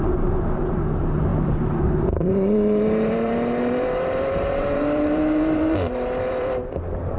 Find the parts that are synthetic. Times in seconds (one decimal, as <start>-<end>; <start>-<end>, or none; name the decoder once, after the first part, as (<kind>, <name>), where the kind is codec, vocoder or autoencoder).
0.0-7.2 (vocoder, BigVGAN v2)